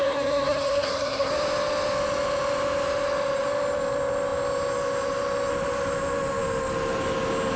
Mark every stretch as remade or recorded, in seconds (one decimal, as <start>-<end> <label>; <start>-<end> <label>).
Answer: 0.0-1.3 remade; 1.3-7.6 recorded